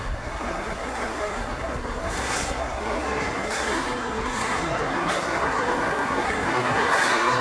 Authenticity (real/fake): fake